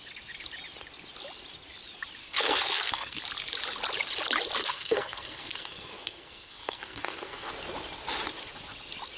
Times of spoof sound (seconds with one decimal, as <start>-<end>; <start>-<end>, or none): 2.2-3.2; 4.6-7.5